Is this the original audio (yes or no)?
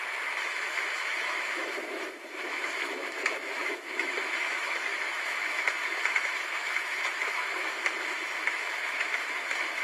no